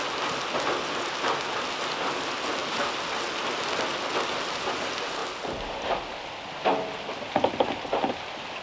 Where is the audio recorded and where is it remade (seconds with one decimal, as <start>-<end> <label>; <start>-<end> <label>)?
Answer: 0.0-8.6 recorded